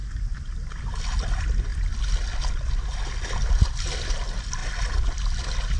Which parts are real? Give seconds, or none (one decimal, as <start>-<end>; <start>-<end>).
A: 0.0-5.8